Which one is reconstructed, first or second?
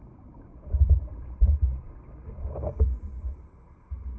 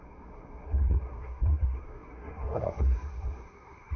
second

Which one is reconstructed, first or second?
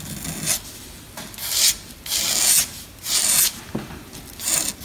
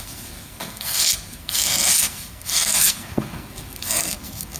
second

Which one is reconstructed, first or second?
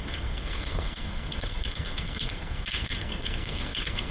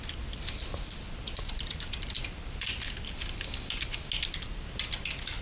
first